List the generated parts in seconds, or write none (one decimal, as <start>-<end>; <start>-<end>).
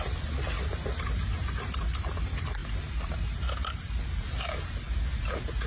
2.6-5.7